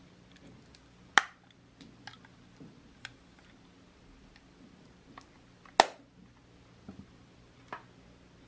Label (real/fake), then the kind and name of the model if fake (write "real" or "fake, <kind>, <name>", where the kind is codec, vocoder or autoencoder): real